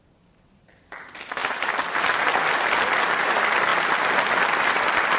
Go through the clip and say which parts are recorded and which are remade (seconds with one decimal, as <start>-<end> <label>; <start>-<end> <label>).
0.0-5.2 recorded